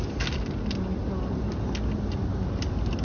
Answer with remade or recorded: recorded